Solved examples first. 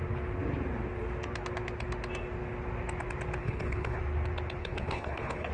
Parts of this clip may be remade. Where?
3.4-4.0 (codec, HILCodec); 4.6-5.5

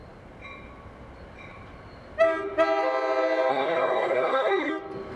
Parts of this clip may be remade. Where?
3.5-4.7 (codec, SNAC)